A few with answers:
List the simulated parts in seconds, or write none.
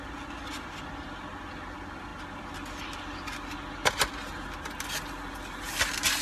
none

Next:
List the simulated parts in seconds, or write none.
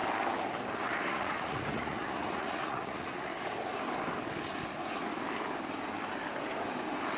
0.8-3.3 (vocoder, Vocos)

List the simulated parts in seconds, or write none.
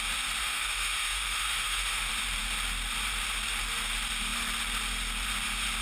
0.4-2.1 (autoencoder, DAC-VAE)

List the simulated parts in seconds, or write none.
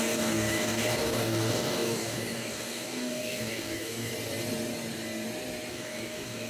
0.0-4.1 (codec, DAC); 5.7-6.5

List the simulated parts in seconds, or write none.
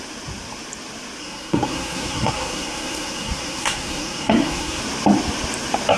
1.2-4.8 (codec, SNAC)